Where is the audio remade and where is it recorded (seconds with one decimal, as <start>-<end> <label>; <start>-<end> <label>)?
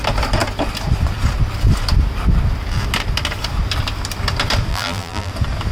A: 0.0-4.7 recorded; 4.7-5.3 remade; 5.3-5.7 recorded